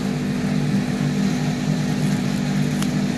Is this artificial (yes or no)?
no